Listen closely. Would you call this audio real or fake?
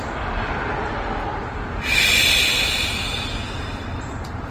real